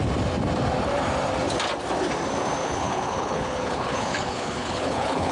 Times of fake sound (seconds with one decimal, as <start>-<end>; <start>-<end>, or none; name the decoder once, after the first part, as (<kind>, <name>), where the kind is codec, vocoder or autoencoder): 2.6-5.3 (codec, HILCodec)